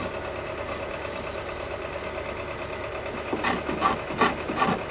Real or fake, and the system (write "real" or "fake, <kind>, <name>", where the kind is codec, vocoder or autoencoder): real